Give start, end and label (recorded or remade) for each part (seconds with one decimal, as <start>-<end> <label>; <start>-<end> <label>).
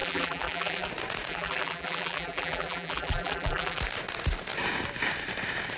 0.0-0.9 remade; 0.9-1.3 recorded; 1.3-3.8 remade; 3.8-5.8 recorded